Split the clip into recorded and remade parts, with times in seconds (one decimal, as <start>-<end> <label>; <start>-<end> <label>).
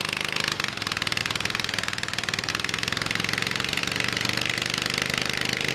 0.0-1.2 recorded; 1.2-2.5 remade; 2.5-3.8 recorded; 3.8-5.7 remade